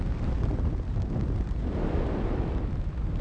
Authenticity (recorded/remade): recorded